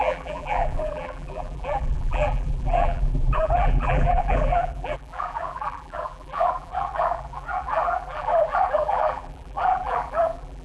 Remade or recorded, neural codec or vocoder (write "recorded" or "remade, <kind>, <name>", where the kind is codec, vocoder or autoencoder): remade, vocoder, BigVGAN v2